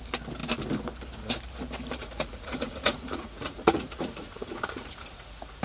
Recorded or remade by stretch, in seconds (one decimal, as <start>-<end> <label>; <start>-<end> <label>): 0.0-2.0 recorded; 2.0-5.6 remade